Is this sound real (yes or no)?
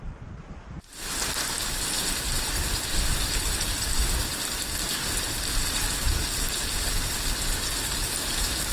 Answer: yes